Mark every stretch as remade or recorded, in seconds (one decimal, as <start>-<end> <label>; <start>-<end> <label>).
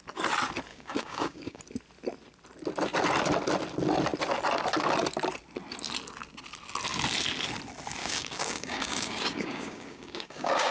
0.0-0.7 recorded; 0.7-1.6 remade; 1.6-8.0 recorded; 8.0-10.7 remade